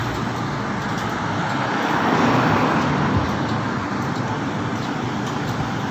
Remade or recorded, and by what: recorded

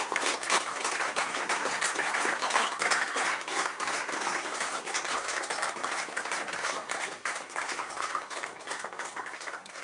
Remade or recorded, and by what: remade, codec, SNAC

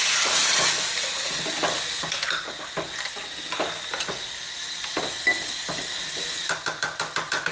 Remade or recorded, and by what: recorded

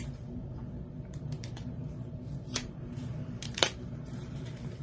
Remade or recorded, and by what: remade, vocoder, BigVGAN v2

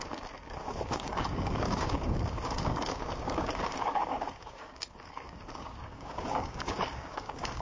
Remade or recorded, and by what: remade, codec, DAC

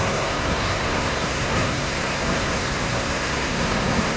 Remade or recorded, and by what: remade, codec, SNAC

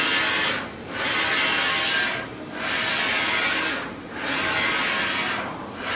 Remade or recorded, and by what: recorded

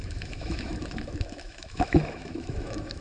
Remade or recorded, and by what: remade, autoencoder, DAC-VAE